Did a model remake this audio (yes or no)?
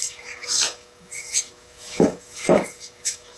yes